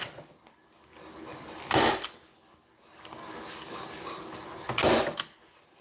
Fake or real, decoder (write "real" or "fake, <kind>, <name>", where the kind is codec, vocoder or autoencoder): real